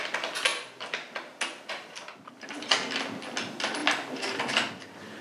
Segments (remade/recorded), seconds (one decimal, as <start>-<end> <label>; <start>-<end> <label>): 0.0-0.5 recorded; 0.5-2.7 remade; 2.7-3.8 recorded; 3.8-5.2 remade